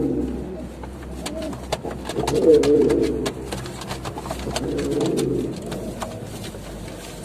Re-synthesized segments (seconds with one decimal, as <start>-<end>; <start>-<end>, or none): none